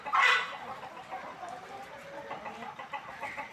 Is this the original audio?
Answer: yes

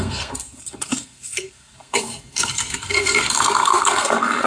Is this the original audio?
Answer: no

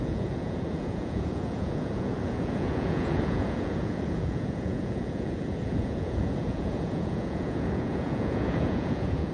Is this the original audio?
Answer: no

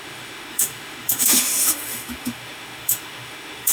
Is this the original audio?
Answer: no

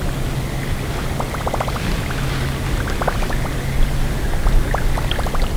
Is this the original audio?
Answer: yes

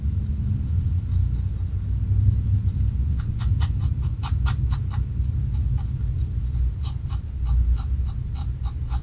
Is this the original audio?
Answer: yes